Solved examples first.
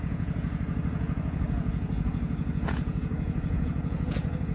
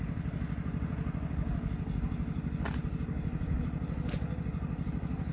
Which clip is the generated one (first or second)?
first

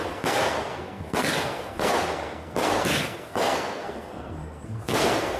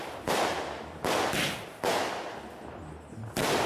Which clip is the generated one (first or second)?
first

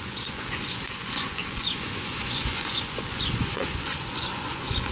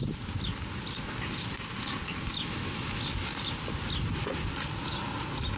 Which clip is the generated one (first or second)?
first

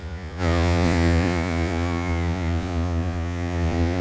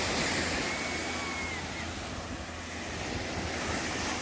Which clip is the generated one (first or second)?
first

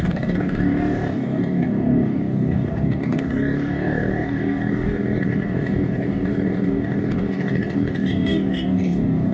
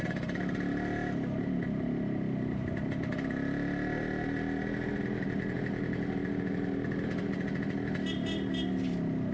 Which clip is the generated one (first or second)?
first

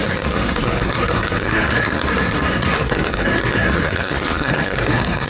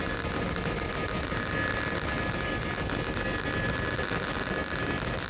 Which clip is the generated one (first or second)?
first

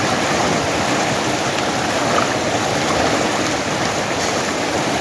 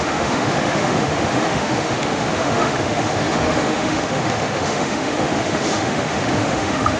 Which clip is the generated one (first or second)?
second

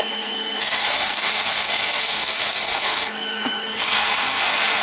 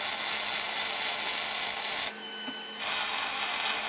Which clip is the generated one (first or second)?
first